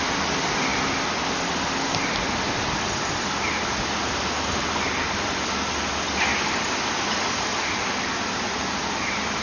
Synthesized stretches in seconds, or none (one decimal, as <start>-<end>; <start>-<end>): none

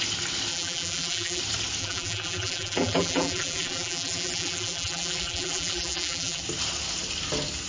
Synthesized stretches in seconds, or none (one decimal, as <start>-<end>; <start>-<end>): 0.5-1.4; 1.8-6.4